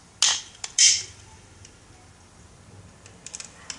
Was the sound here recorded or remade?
recorded